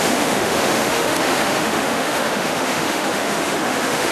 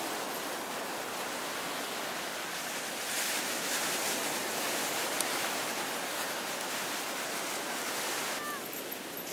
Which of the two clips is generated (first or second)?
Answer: first